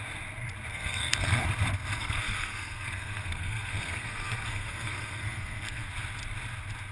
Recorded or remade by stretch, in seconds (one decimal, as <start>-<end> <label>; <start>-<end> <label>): 0.0-0.7 recorded; 0.7-1.4 remade; 1.4-2.0 recorded; 2.0-5.9 remade; 5.9-6.9 recorded